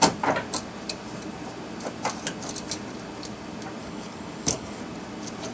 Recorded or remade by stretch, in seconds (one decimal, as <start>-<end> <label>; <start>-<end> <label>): 0.0-3.8 recorded; 3.8-4.8 remade; 4.8-5.5 recorded